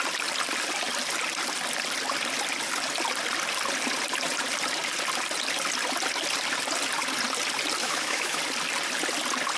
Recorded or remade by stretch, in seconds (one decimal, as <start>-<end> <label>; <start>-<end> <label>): 0.0-7.8 recorded; 7.8-8.4 remade; 8.4-9.6 recorded